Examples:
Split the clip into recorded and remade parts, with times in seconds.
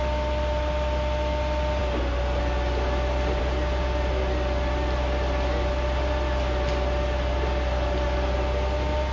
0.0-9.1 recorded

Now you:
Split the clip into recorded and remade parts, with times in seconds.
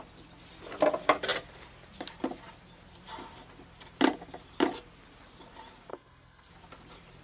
0.0-5.9 recorded; 5.9-6.5 remade; 6.5-7.2 recorded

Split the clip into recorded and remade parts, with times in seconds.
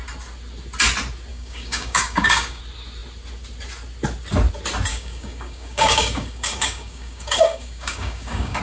0.0-1.3 recorded; 1.3-2.6 remade; 2.6-4.9 recorded; 4.9-8.6 remade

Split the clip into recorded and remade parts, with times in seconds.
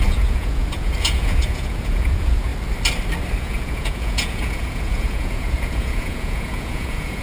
0.0-2.5 remade; 2.5-3.4 recorded; 3.4-7.2 remade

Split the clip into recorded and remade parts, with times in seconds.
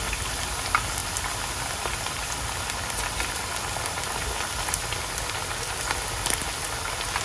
0.0-7.2 recorded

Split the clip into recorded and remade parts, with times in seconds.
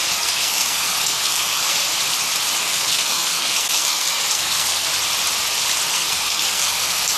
0.0-1.9 remade; 1.9-2.6 recorded; 2.6-4.9 remade; 4.9-5.9 recorded; 5.9-7.2 remade